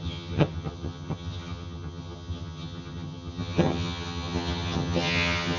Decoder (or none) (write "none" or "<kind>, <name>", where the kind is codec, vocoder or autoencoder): vocoder, HiFi-GAN